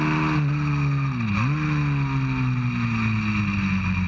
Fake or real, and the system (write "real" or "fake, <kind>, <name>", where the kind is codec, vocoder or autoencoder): real